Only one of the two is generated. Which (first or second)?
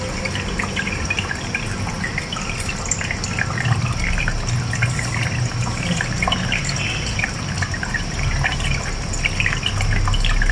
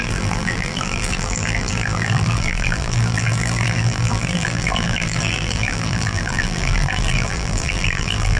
second